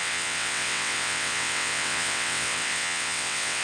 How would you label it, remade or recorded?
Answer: remade